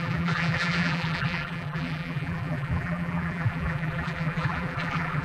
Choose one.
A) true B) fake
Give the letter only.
B